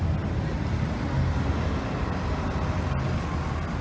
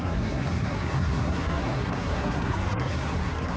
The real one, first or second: first